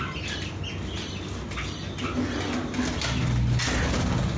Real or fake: real